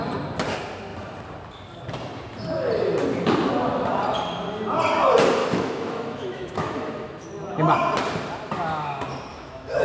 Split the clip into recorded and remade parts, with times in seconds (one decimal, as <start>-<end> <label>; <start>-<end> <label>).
0.0-5.4 recorded; 5.4-7.3 remade; 7.3-9.3 recorded; 9.3-9.8 remade

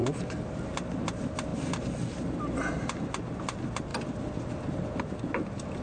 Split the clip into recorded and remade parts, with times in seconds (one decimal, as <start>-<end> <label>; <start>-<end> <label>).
0.0-5.8 recorded

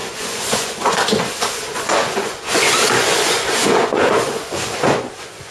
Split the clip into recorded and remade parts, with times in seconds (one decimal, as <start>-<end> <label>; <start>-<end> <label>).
0.0-5.5 remade

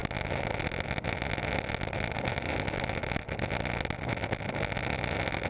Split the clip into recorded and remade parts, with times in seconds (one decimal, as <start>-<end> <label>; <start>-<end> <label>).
0.0-5.5 recorded

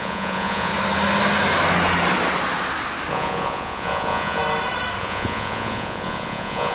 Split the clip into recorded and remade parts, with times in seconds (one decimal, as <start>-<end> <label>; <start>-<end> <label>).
0.0-0.7 remade; 0.7-3.1 recorded; 3.1-4.4 remade; 4.4-5.0 recorded; 5.0-6.7 remade

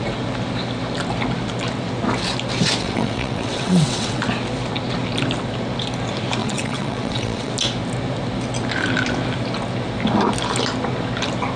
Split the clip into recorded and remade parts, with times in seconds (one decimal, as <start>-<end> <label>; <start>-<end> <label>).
0.0-2.8 recorded; 2.8-4.2 remade; 4.2-6.4 recorded; 6.4-7.5 remade; 7.5-11.6 recorded